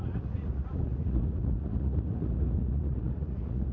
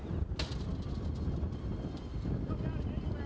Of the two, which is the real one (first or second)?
second